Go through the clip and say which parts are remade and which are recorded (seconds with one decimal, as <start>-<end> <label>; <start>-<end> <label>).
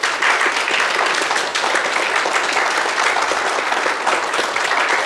0.0-5.1 recorded